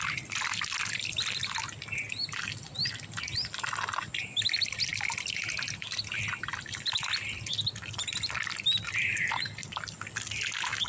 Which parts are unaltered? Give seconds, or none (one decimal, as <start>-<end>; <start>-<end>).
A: 0.0-10.9